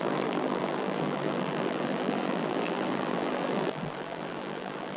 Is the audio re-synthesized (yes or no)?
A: yes